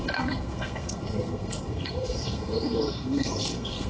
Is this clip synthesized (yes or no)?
yes